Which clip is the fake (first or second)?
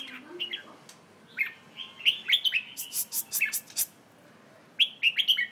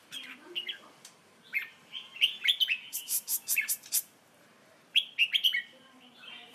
second